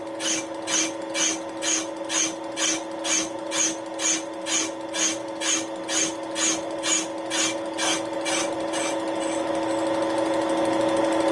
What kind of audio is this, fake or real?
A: real